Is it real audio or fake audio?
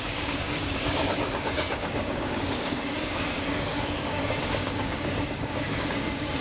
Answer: fake